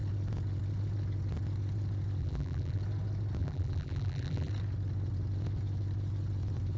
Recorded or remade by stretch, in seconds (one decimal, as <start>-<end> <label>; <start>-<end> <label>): 0.0-2.2 recorded; 2.2-2.8 remade; 2.8-3.4 recorded; 3.4-4.5 remade; 4.5-6.8 recorded

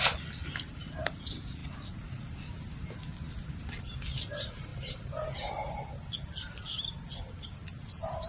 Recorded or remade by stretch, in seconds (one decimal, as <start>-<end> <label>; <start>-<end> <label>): 0.0-4.7 recorded; 4.7-5.5 remade; 5.5-8.3 recorded

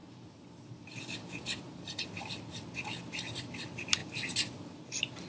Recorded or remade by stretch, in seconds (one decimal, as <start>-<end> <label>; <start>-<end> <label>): 0.0-5.3 recorded

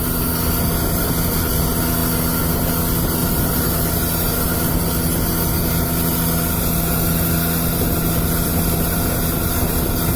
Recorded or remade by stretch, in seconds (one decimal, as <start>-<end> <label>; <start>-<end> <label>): 0.0-3.2 recorded; 3.2-3.8 remade; 3.8-10.2 recorded

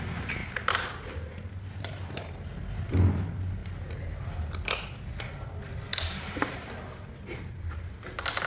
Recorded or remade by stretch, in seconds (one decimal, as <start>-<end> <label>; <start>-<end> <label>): 0.0-3.6 recorded; 3.6-4.5 remade; 4.5-5.9 recorded; 5.9-7.8 remade; 7.8-8.5 recorded